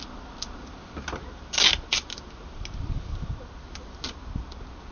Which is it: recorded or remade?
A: recorded